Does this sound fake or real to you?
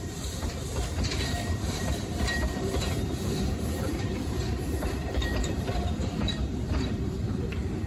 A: fake